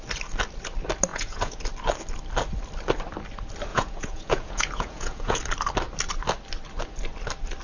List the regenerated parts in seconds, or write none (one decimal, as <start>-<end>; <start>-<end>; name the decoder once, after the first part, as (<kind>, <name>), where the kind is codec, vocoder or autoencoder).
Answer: 1.1-1.6 (vocoder, Vocos); 3.7-5.4